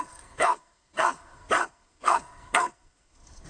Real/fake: fake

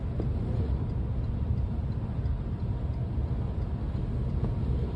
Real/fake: real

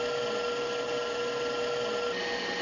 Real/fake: real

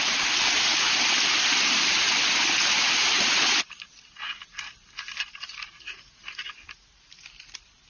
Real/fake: real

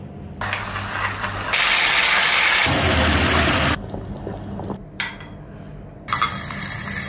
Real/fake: real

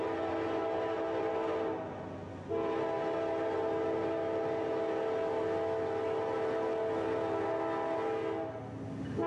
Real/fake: real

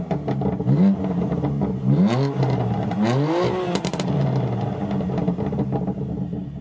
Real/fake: real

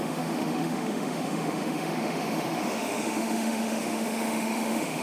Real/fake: fake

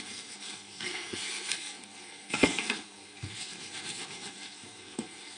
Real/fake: fake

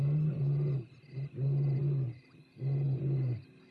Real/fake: real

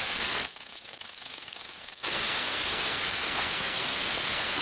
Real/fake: fake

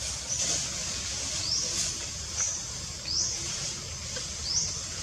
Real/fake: real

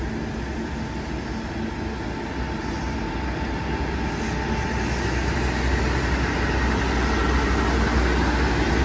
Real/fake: real